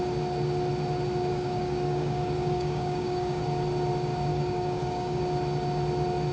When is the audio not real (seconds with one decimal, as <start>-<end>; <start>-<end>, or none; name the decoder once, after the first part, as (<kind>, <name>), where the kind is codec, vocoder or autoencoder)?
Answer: 1.3-3.4 (codec, DAC); 4.3-5.2